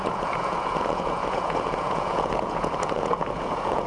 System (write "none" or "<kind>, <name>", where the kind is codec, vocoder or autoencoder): vocoder, Vocos